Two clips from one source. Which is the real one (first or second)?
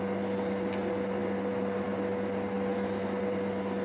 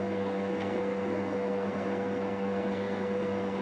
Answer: first